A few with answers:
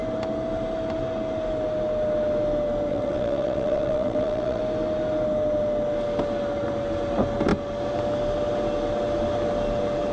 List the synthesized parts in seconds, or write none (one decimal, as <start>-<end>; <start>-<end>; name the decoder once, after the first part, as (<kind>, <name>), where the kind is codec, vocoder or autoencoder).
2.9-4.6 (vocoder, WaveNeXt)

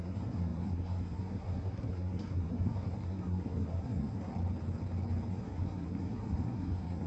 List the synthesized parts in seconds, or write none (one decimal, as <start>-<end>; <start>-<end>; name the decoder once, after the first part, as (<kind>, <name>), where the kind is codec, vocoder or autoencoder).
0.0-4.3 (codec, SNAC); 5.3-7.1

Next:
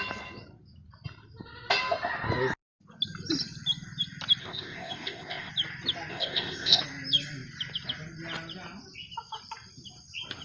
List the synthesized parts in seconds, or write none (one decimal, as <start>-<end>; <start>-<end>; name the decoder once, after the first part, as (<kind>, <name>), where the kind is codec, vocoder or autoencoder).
4.4-5.5 (codec, ZipCodec); 6.1-6.8